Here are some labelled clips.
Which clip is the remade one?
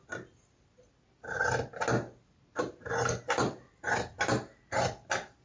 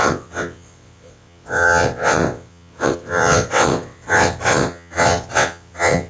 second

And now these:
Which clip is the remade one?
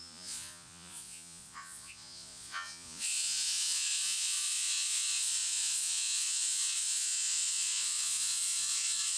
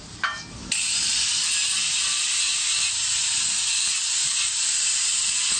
first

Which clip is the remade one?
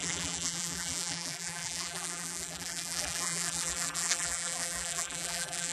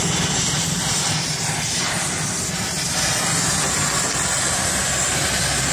first